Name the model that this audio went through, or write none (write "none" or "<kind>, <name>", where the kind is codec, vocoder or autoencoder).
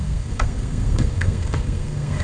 codec, SNAC